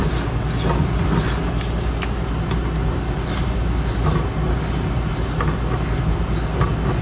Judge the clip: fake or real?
real